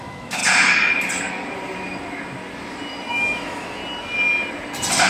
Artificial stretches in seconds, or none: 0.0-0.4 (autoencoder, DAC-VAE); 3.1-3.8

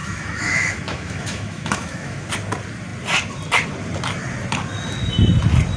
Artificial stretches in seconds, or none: 0.0-2.3 (autoencoder, DAC-VAE)

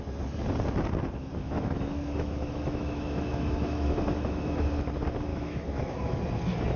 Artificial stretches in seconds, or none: 1.4-4.7 (autoencoder, DAC-VAE); 5.3-6.2

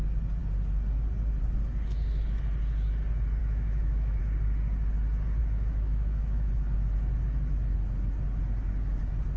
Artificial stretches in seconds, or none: 3.4-4.2 (autoencoder, DAC-VAE); 5.4-6.5